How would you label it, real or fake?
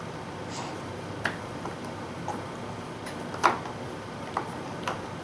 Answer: real